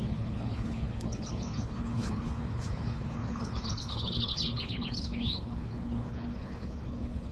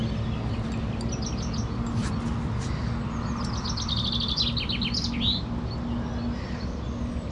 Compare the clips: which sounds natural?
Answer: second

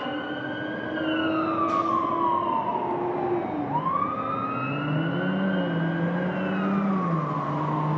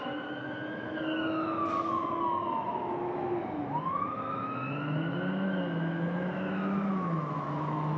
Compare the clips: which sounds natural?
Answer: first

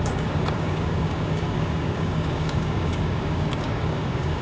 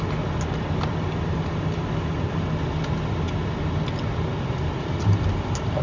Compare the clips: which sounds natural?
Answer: second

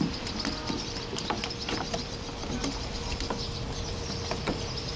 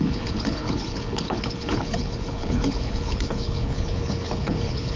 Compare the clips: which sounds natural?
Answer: first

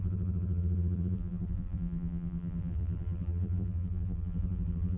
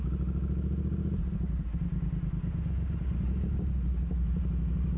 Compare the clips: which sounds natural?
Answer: second